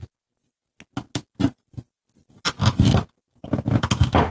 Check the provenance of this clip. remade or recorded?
recorded